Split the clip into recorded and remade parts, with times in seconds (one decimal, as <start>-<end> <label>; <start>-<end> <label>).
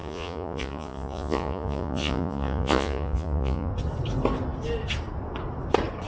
0.0-3.7 remade; 3.7-6.1 recorded